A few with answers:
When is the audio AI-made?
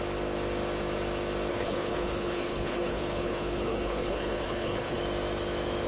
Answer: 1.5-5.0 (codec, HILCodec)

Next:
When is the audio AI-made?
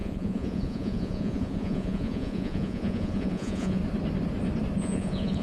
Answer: 0.0-3.8 (vocoder, Vocos); 4.8-5.4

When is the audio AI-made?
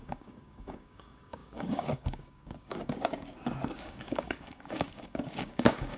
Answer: 0.0-6.0 (codec, DAC)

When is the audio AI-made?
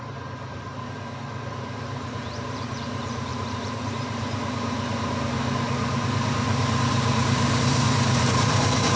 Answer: 0.0-9.0 (vocoder, BigVGAN v2)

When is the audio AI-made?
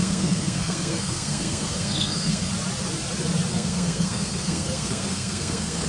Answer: 0.0-2.5 (codec, SNAC); 3.5-5.9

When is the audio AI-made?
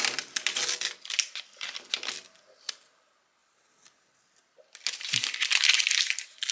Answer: none